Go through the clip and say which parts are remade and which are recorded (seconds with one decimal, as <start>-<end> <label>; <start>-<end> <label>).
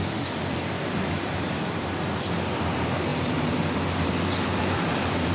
0.0-1.7 remade; 1.7-3.1 recorded; 3.1-4.1 remade; 4.1-4.5 recorded; 4.5-5.3 remade